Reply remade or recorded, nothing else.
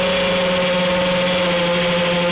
recorded